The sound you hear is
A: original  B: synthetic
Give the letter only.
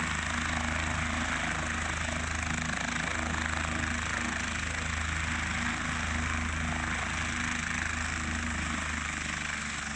A